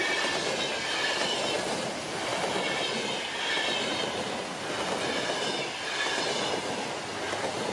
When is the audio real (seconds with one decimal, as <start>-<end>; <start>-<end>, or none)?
0.0-7.7